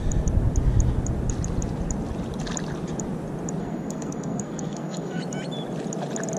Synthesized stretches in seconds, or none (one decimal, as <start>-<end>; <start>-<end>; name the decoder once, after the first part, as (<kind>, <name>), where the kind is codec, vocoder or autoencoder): 3.6-5.2 (codec, SNAC)